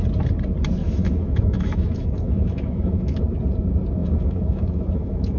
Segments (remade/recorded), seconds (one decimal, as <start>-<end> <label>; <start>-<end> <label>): 0.0-0.8 recorded; 0.8-3.2 remade; 3.2-4.0 recorded; 4.0-5.4 remade